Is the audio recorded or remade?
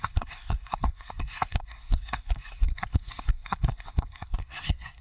remade